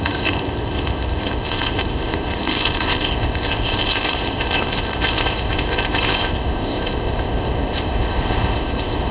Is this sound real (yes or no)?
no